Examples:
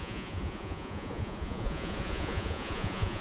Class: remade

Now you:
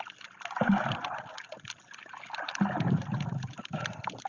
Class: recorded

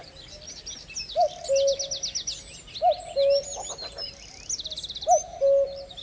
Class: recorded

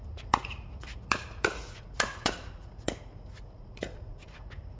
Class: remade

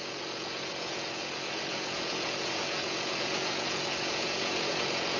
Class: remade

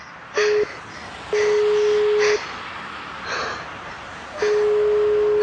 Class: recorded